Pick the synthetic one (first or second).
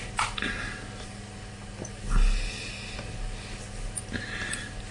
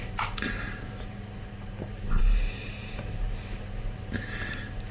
second